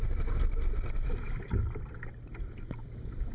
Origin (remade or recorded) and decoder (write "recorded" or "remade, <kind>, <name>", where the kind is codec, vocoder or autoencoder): recorded